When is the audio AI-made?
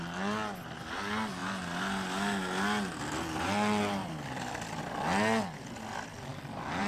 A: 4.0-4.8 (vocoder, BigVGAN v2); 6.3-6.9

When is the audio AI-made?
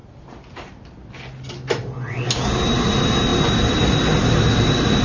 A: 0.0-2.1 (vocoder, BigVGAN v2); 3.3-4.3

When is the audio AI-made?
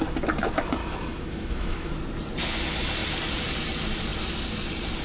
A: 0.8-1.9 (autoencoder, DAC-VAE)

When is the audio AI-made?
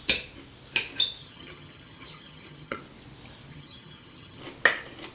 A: 1.2-2.8 (vocoder, HiFi-GAN); 3.5-4.4